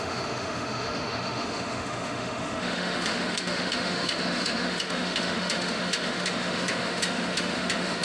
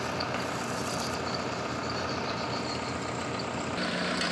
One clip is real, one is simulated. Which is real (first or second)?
second